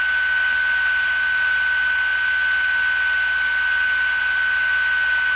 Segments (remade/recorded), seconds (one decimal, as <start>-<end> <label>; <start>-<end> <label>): 0.0-5.4 recorded